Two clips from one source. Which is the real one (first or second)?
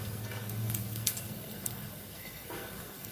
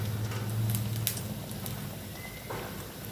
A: second